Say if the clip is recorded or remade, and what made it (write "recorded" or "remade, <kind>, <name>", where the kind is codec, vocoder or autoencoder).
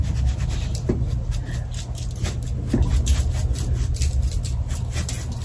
recorded